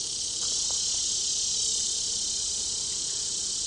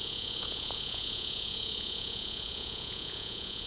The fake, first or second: second